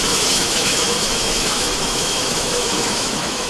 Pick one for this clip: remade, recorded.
remade